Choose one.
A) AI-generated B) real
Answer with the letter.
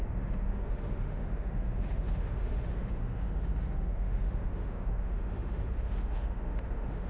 A